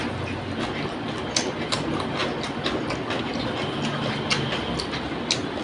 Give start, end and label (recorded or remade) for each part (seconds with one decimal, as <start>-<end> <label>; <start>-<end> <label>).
0.0-5.6 recorded